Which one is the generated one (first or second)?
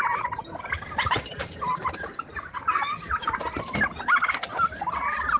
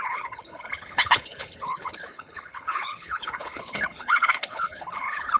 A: second